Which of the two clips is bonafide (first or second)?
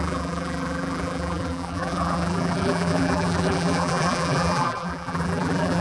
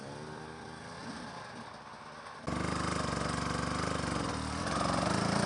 second